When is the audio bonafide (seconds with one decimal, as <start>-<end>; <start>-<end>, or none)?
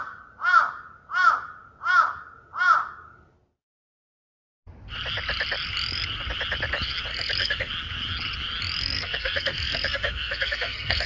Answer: 0.0-7.1; 7.7-8.8